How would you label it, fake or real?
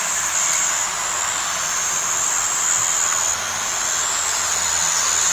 real